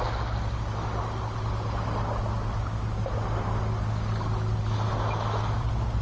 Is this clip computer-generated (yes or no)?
no